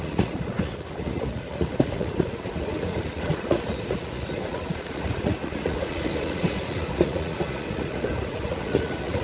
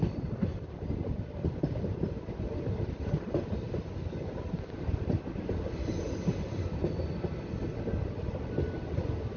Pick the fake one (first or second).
first